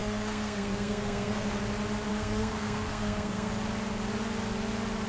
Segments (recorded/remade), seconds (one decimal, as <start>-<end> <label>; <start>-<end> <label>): 0.0-1.6 remade; 1.6-2.1 recorded; 2.1-3.5 remade; 3.5-5.1 recorded